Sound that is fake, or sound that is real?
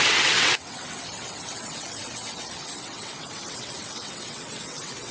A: fake